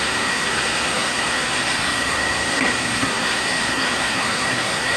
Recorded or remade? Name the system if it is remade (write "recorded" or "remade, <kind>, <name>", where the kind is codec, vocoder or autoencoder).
remade, codec, SNAC